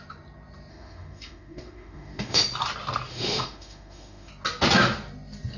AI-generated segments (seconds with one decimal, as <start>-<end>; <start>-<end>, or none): 0.7-2.4; 3.1-4.3